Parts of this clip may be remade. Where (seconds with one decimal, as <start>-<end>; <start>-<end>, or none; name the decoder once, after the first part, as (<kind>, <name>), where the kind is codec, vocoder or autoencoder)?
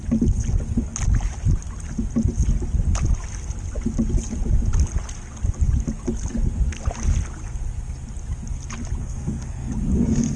9.0-9.7 (codec, SNAC)